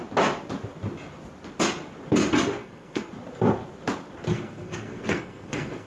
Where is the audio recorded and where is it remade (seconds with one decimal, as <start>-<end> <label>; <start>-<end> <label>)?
0.0-2.6 recorded; 2.6-3.1 remade; 3.1-4.3 recorded; 4.3-5.9 remade